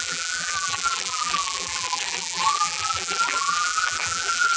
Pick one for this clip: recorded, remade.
remade